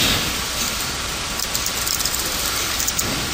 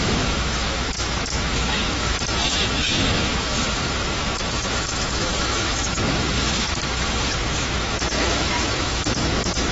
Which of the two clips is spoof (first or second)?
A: second